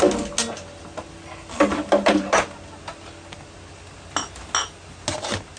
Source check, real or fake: real